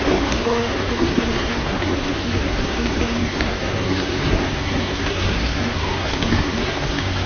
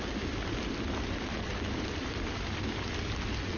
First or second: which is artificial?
first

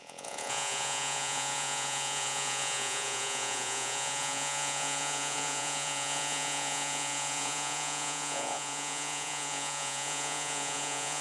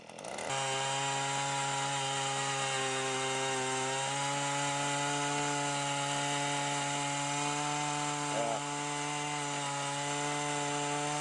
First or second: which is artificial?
first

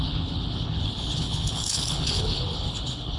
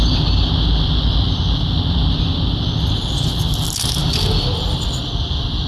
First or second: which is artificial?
first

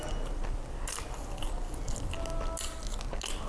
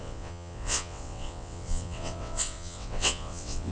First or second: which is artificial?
second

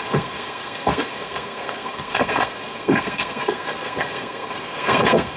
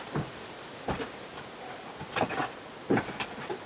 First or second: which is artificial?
first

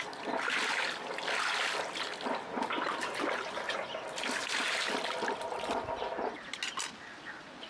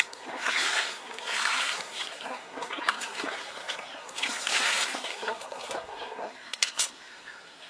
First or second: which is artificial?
second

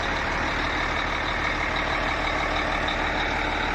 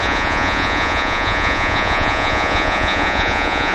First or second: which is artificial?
second